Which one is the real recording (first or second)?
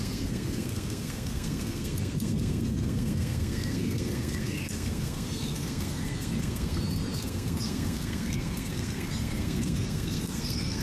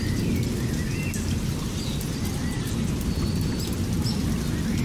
second